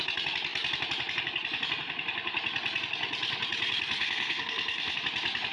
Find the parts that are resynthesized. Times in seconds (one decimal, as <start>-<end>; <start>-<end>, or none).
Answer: 4.0-5.0

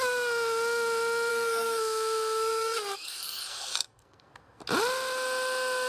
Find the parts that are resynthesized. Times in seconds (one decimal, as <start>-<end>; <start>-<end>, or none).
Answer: 1.3-4.6

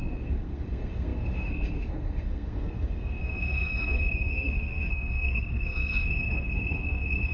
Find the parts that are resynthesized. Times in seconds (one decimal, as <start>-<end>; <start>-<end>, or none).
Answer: 0.0-7.3

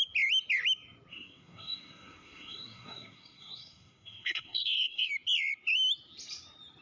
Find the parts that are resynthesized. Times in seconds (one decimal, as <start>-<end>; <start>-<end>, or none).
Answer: 1.1-5.1

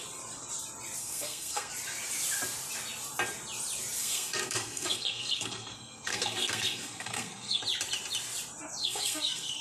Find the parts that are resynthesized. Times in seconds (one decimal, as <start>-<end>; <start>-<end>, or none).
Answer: 1.0-1.7; 4.0-7.6; 8.8-9.6